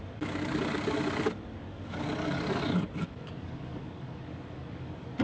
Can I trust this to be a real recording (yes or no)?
no